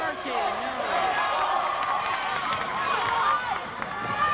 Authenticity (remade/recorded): recorded